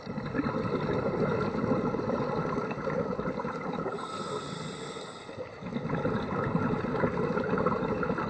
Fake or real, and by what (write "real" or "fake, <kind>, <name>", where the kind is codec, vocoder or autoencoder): real